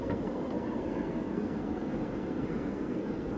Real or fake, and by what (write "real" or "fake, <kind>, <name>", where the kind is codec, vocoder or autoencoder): fake, codec, SNAC